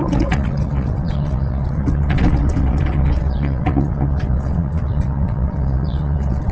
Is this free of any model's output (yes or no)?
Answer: no